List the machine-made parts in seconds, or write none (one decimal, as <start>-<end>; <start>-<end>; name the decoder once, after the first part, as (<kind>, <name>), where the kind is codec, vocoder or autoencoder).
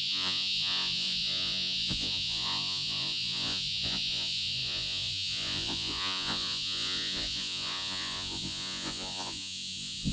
0.0-10.1 (vocoder, Vocos)